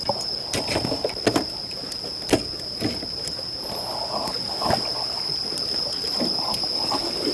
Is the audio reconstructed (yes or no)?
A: no